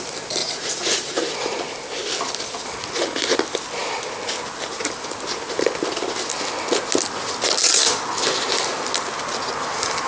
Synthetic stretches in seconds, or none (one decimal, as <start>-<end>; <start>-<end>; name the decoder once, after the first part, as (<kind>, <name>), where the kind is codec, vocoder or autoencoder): 0.4-1.6 (vocoder, Vocos)